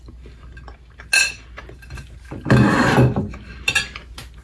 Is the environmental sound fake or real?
real